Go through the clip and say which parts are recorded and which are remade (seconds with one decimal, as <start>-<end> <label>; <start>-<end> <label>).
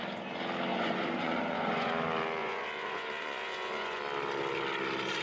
0.0-0.7 recorded; 0.7-1.9 remade; 1.9-2.4 recorded; 2.4-4.0 remade; 4.0-5.2 recorded